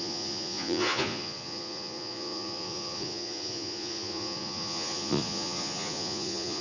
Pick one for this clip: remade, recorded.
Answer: remade